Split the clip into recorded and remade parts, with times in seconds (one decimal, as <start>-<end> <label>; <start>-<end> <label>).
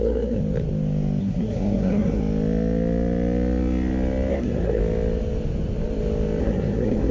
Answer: 0.0-0.4 remade; 0.4-1.2 recorded; 1.2-2.2 remade; 2.2-4.3 recorded; 4.3-4.8 remade; 4.8-6.4 recorded; 6.4-7.1 remade